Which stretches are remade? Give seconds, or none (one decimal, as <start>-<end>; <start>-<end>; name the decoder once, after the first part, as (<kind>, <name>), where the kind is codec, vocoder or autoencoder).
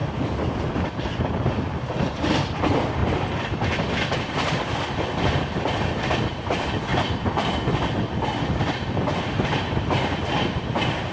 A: 0.0-6.9 (vocoder, BigVGAN v2); 9.8-11.1